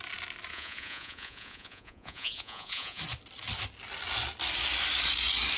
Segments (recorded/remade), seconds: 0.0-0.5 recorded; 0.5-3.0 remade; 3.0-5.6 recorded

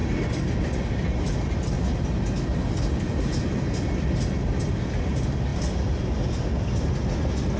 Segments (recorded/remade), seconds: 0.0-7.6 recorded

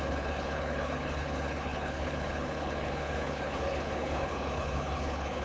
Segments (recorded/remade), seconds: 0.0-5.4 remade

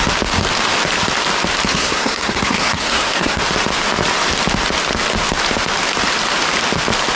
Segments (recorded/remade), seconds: 0.0-1.7 recorded; 1.7-3.4 remade; 3.4-7.2 recorded

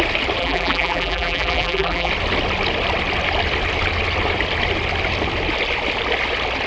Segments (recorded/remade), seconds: 0.0-0.4 recorded; 0.4-2.1 remade; 2.1-6.7 recorded